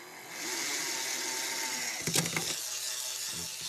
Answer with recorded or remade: recorded